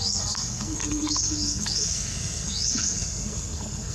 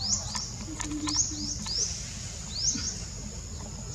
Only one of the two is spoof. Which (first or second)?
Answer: first